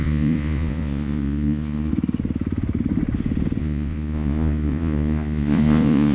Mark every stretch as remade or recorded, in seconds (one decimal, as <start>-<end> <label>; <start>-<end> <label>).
0.0-1.9 remade; 1.9-3.6 recorded; 3.6-6.1 remade